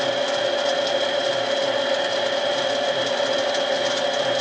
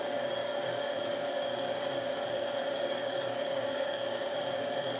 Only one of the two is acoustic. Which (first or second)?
first